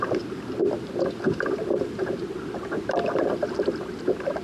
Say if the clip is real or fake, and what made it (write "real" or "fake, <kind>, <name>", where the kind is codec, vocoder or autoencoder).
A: fake, vocoder, BigVGAN v2